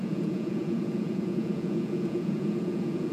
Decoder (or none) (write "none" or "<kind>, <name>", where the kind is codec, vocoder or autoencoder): vocoder, Vocos